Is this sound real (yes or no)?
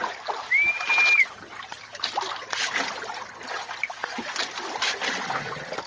yes